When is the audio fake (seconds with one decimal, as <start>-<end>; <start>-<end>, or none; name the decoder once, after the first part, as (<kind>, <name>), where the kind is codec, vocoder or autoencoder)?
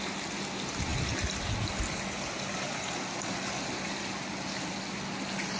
none